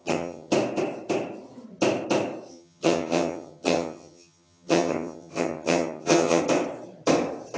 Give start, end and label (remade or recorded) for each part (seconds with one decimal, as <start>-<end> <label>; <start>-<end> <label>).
0.0-0.5 remade; 0.5-2.5 recorded; 2.5-6.4 remade; 6.4-7.6 recorded